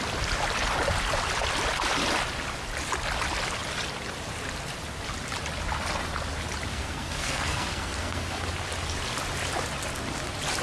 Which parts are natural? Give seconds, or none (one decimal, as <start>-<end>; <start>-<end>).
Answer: 0.0-6.7; 8.4-10.6